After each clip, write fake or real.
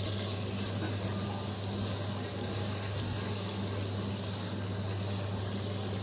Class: real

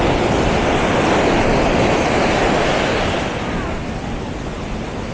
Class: real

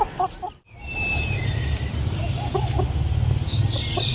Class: real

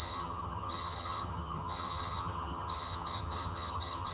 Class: fake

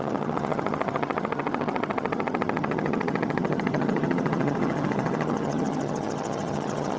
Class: fake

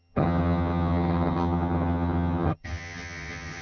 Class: fake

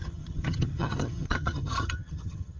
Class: fake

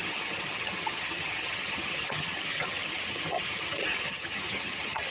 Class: fake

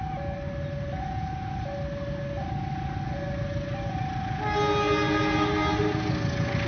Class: real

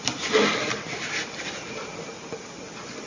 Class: real